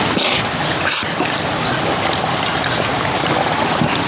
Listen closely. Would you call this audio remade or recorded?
recorded